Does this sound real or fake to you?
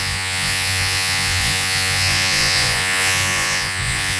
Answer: fake